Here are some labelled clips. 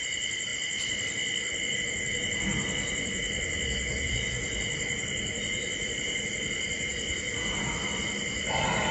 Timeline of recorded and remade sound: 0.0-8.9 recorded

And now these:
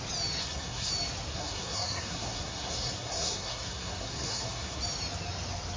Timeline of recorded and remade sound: 0.0-0.4 recorded; 0.4-0.9 remade; 0.9-1.3 recorded; 1.3-4.8 remade; 4.8-5.8 recorded